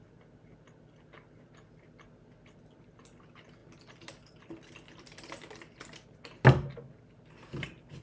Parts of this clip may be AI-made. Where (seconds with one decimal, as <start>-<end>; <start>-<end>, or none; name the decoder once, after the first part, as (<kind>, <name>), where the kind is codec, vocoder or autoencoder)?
3.6-6.2 (vocoder, BigVGAN v2)